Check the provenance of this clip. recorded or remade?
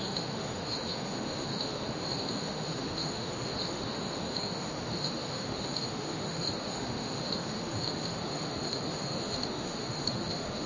remade